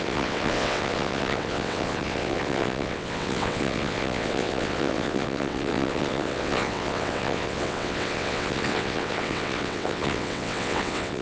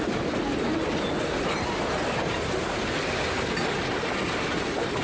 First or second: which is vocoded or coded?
first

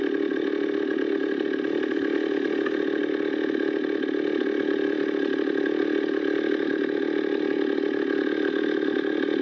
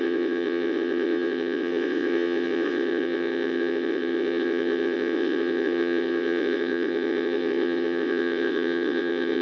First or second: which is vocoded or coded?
second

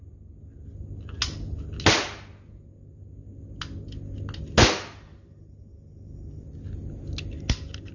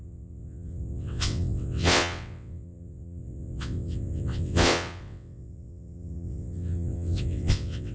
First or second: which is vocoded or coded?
second